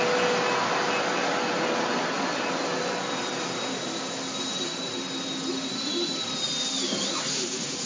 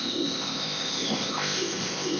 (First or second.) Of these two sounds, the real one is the first